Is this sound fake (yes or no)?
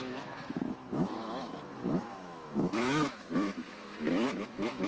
yes